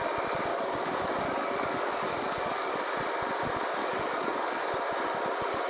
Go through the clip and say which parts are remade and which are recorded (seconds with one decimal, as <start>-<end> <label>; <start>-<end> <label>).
0.0-0.5 recorded; 0.5-2.8 remade; 2.8-3.8 recorded; 3.8-4.7 remade; 4.7-5.7 recorded